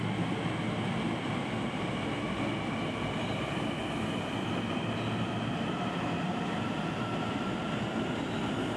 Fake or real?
real